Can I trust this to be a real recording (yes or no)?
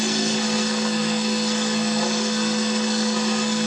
no